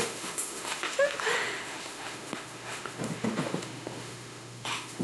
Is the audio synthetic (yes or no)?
yes